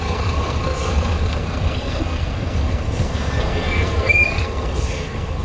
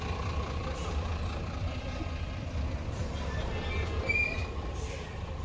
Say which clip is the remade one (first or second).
first